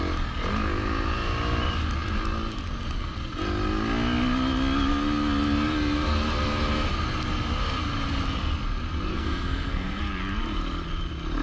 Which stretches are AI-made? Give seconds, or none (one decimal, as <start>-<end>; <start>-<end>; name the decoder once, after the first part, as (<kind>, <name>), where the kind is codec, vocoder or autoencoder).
9.1-10.0 (codec, SNAC)